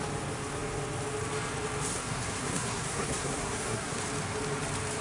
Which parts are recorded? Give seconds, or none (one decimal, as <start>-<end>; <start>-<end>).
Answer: 0.0-1.9; 4.0-5.0